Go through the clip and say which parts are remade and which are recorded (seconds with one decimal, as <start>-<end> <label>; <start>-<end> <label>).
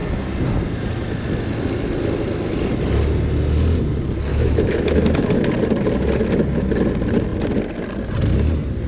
0.0-4.3 recorded; 4.3-5.3 remade; 5.3-8.9 recorded